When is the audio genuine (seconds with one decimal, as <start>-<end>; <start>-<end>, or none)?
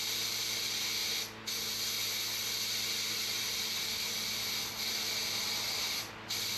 0.0-6.6